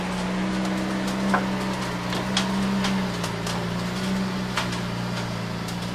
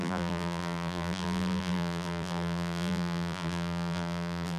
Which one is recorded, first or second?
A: first